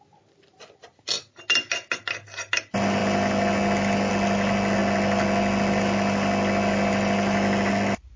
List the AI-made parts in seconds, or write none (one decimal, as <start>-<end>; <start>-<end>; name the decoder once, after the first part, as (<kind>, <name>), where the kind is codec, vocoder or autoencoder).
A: none